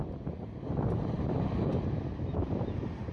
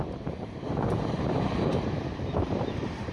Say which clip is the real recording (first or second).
first